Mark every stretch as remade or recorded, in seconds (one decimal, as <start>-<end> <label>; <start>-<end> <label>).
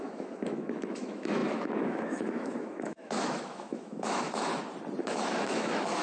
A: 0.0-4.5 remade; 4.5-5.0 recorded; 5.0-6.0 remade